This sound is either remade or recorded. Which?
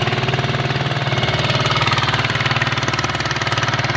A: recorded